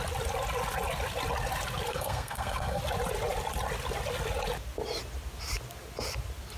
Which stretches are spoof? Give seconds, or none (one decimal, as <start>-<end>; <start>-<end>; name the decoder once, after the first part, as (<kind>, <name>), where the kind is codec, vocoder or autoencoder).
1.9-2.8 (codec, SNAC)

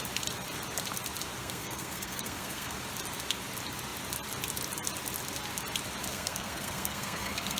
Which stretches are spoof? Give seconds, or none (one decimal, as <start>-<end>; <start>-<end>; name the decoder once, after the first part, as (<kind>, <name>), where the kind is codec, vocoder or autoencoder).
1.4-2.8 (codec, SNAC); 6.1-7.6

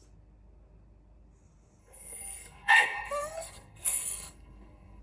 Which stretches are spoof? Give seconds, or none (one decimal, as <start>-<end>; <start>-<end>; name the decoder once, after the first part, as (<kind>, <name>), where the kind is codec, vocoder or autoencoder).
1.8-5.0 (codec, SNAC)